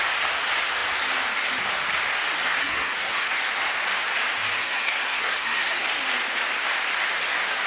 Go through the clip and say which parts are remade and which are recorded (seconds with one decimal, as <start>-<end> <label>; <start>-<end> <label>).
0.0-2.6 recorded; 2.6-3.3 remade; 3.3-4.6 recorded; 4.6-5.8 remade; 5.8-7.7 recorded